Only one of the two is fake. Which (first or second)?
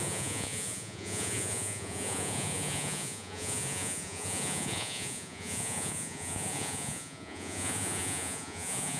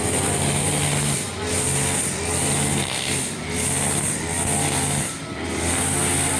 first